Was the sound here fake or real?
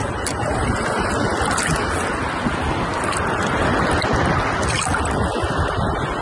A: real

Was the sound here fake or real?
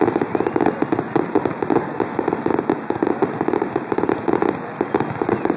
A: real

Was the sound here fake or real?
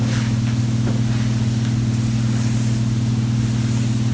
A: real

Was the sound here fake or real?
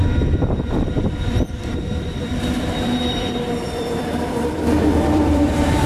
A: fake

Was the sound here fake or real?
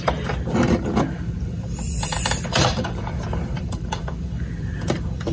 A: fake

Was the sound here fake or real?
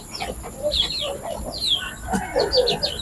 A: real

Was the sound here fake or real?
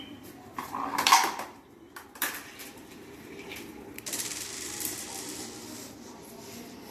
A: fake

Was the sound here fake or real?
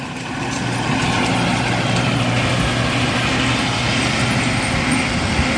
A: real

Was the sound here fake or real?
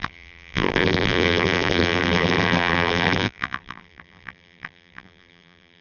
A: fake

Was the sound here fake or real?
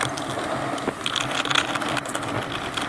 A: real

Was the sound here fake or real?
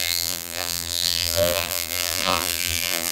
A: fake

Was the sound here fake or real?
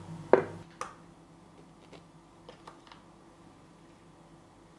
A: real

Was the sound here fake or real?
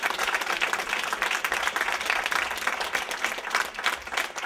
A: real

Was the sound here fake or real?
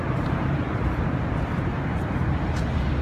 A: fake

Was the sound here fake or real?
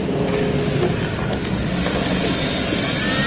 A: real